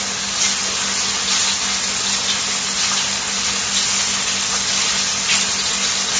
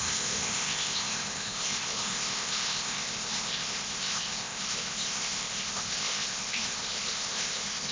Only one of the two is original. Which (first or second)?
first